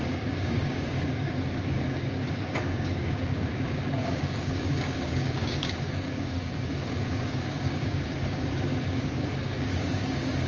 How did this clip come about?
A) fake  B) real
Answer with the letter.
A